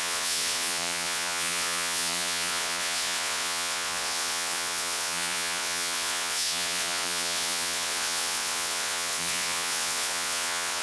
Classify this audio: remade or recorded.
remade